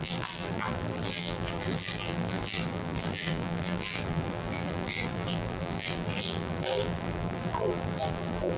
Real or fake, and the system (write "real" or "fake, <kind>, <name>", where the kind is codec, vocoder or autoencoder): fake, vocoder, BigVGAN v2